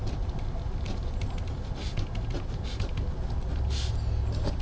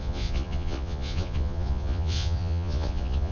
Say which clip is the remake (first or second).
second